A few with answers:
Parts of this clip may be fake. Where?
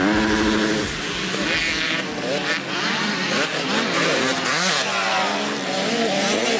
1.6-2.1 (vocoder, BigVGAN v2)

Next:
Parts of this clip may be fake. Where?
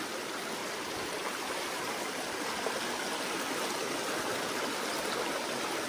0.6-2.4 (vocoder, BigVGAN v2)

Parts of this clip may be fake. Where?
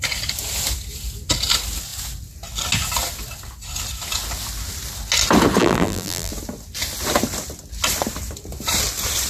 5.6-6.3 (vocoder, BigVGAN v2)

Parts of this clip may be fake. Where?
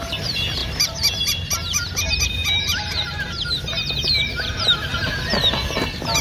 0.0-4.9 (vocoder, BigVGAN v2)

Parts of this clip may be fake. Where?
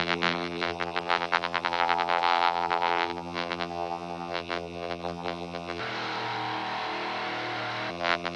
0.0-5.8 (vocoder, BigVGAN v2); 7.9-8.4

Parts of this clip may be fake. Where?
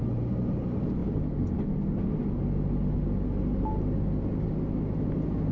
none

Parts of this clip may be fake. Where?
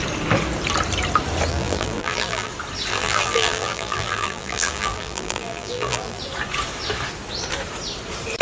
1.5-2.5 (vocoder, BigVGAN v2); 2.9-6.2